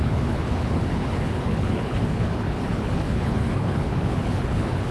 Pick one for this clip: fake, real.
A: fake